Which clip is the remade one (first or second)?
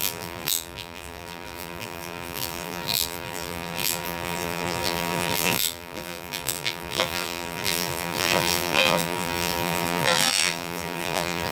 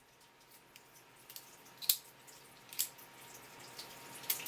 first